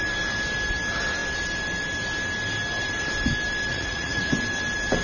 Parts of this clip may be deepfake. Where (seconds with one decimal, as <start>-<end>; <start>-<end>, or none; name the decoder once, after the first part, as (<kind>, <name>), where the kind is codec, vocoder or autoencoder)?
3.7-4.3 (vocoder, Vocos)